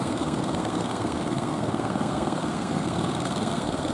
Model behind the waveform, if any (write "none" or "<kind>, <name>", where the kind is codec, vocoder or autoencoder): codec, SNAC